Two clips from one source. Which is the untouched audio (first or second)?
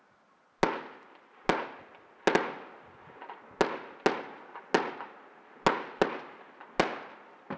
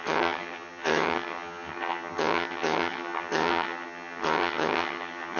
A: first